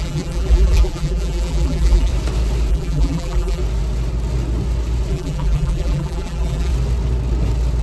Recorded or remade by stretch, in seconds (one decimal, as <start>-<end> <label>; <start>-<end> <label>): 0.0-2.1 remade; 2.1-2.7 recorded; 2.7-3.6 remade; 3.6-5.1 recorded; 5.1-6.7 remade; 6.7-7.8 recorded